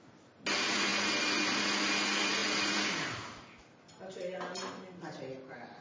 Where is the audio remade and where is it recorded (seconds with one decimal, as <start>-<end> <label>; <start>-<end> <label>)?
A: 0.0-5.8 recorded